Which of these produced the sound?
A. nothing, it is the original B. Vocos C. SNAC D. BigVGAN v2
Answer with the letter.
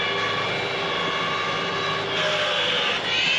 A